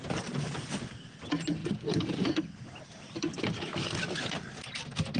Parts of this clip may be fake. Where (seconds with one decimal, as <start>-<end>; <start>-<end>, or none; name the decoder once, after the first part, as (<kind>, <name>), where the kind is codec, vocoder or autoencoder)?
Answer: none